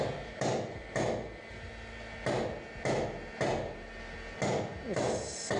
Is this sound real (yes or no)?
yes